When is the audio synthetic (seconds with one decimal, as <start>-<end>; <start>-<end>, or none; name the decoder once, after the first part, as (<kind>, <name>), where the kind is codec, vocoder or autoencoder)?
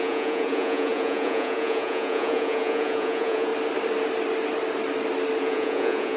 0.0-3.5 (vocoder, Vocos); 5.4-6.2